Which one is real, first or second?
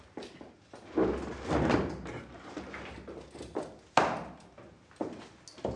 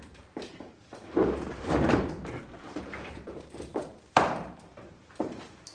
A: first